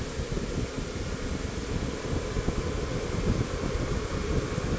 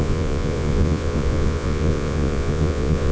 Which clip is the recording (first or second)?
first